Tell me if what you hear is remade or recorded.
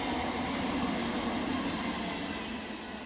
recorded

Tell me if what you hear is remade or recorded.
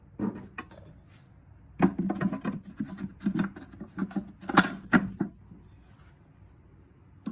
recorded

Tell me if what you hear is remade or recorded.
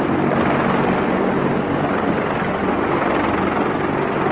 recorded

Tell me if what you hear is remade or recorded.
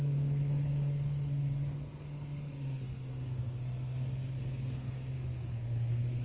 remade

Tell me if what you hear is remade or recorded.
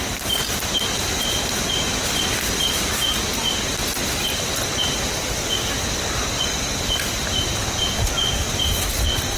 recorded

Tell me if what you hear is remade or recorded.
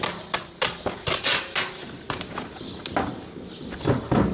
recorded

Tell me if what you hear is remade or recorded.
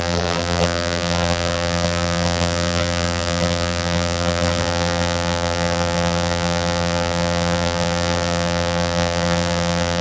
remade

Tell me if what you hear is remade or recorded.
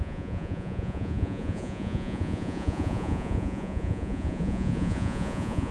remade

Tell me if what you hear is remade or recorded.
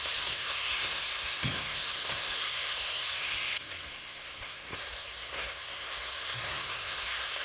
remade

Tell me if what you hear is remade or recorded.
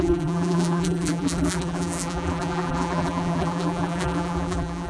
remade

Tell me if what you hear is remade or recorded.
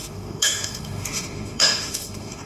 remade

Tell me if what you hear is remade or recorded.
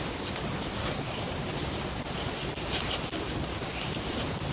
recorded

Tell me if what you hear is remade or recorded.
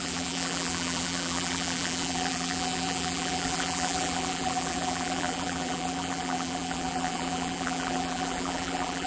remade